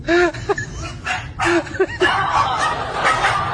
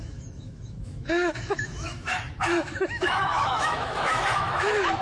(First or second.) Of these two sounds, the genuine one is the first